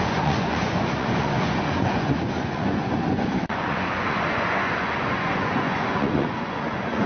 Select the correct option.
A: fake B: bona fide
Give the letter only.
A